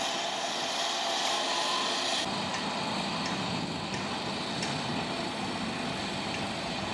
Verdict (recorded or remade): recorded